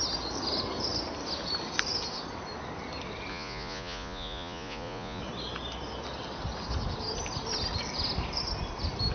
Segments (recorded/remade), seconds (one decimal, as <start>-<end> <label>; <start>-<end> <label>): 0.0-3.3 recorded; 3.3-5.2 remade; 5.2-9.1 recorded